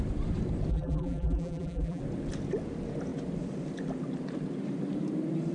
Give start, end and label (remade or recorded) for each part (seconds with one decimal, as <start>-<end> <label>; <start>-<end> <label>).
0.0-0.7 recorded; 0.7-2.0 remade; 2.0-5.5 recorded